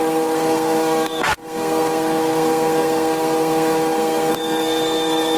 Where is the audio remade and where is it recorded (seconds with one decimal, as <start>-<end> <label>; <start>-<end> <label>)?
0.0-5.4 remade